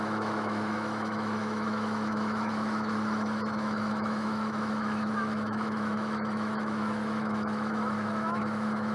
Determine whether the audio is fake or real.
fake